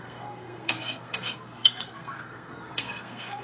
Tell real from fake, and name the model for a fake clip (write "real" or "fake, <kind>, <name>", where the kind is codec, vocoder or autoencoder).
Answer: fake, codec, SNAC